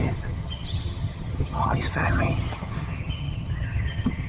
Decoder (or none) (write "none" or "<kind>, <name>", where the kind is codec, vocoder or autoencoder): vocoder, HiFi-GAN